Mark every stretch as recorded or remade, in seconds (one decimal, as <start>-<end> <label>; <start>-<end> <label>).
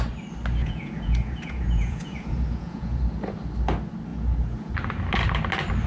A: 0.0-0.6 recorded; 0.6-3.0 remade; 3.0-4.1 recorded; 4.1-4.7 remade; 4.7-5.9 recorded